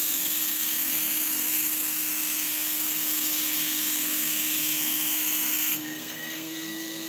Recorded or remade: remade